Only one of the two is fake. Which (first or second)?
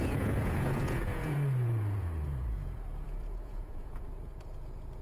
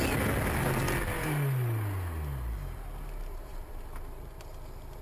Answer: first